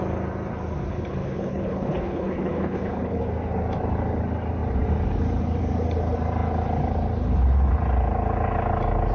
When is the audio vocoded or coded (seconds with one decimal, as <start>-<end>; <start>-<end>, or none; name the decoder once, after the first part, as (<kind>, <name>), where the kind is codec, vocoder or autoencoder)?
0.9-3.2 (codec, HILCodec)